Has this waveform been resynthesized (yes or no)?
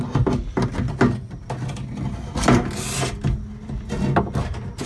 no